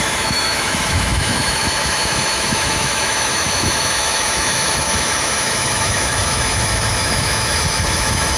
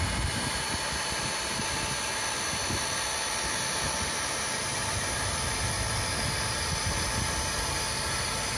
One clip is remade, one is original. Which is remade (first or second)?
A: first